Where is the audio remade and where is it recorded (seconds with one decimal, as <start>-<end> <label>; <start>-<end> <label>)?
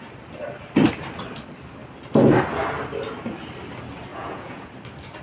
0.0-4.1 recorded; 4.1-4.7 remade; 4.7-5.2 recorded